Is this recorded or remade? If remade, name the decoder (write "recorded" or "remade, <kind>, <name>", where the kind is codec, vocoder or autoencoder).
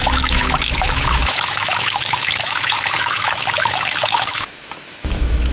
remade, autoencoder, DAC-VAE